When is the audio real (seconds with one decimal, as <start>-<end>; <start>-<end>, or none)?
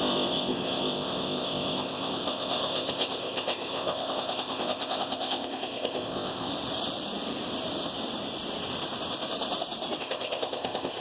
6.5-10.0